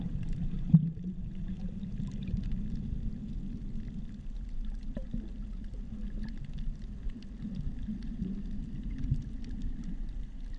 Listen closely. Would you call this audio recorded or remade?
recorded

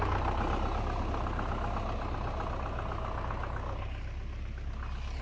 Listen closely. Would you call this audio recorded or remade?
recorded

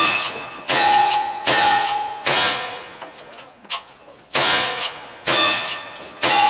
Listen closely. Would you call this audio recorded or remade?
remade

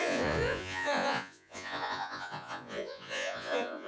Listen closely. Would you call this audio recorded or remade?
remade